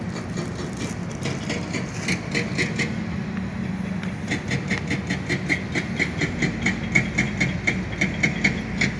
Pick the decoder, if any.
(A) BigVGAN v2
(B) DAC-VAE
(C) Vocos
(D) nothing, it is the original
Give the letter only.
D